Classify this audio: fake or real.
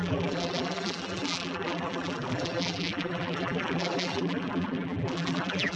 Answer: fake